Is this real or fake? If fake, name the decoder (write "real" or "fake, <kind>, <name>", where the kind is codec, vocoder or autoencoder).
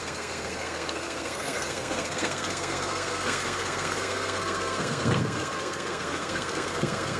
fake, codec, SNAC